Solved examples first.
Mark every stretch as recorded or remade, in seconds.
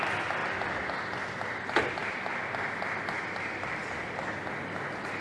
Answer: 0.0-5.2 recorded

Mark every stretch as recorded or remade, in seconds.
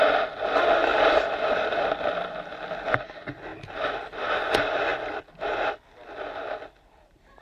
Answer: 0.0-7.4 recorded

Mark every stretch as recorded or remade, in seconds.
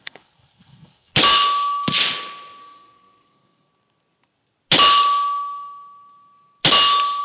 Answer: 0.0-1.1 remade; 1.1-2.6 recorded; 2.6-3.7 remade; 3.7-7.2 recorded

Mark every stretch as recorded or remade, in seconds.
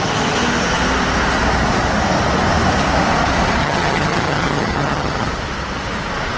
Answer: 0.0-3.6 recorded; 3.6-5.3 remade; 5.3-6.4 recorded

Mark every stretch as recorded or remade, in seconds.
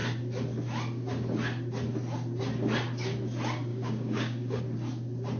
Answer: 0.0-3.7 recorded; 3.7-4.6 remade; 4.6-5.4 recorded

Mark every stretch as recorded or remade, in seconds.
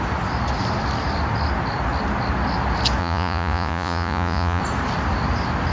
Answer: 0.0-3.0 recorded; 3.0-4.6 remade; 4.6-5.7 recorded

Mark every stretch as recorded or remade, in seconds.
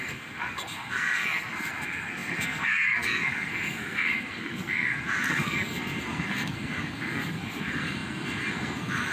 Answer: 0.0-9.1 remade